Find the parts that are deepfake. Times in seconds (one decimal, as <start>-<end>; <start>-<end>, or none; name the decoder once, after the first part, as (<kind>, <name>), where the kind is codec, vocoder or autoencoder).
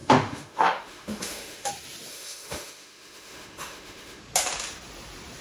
0.0-1.7 (autoencoder, DAC-VAE); 2.1-4.2